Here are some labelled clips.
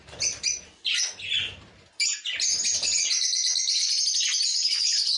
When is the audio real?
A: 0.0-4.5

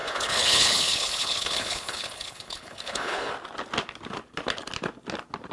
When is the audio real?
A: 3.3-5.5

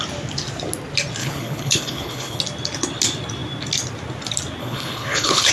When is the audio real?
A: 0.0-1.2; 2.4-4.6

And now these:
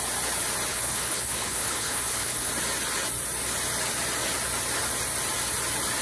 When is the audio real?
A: 0.0-0.7; 2.5-6.0

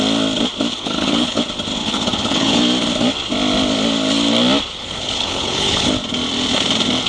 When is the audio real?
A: 0.0-0.7; 1.4-1.8; 2.6-4.7; 5.9-7.1

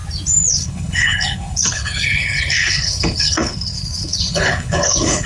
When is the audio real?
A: 0.0-0.5

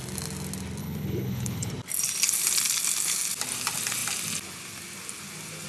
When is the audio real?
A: 0.0-0.8; 1.7-5.7